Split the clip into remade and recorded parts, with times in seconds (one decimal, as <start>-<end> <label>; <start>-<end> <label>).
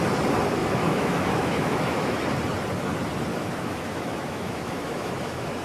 0.0-0.6 recorded; 0.6-2.2 remade; 2.2-3.3 recorded; 3.3-5.6 remade